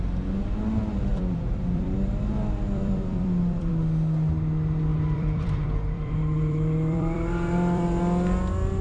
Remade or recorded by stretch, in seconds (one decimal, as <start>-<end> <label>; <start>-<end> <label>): 0.0-1.1 recorded; 1.1-3.7 remade; 3.7-4.9 recorded; 4.9-8.0 remade; 8.0-8.8 recorded